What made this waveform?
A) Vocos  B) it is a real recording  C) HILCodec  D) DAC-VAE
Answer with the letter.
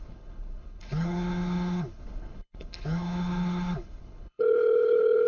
C